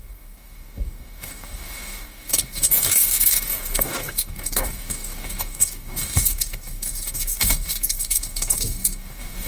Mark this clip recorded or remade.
remade